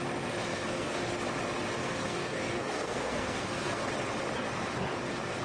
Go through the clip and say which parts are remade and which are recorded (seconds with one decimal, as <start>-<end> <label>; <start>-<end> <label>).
0.0-0.5 recorded; 0.5-1.0 remade; 1.0-1.8 recorded; 1.8-3.9 remade; 3.9-5.4 recorded